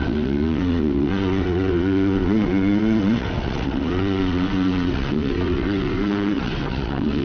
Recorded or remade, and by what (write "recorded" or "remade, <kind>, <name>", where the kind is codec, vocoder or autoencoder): remade, vocoder, WaveNeXt